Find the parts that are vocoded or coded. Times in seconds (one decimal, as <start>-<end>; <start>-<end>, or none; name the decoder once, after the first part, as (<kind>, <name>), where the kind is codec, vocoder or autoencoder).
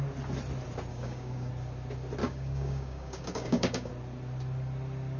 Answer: 0.9-1.5 (codec, DAC); 2.2-3.9